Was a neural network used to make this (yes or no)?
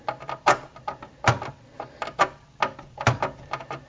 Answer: no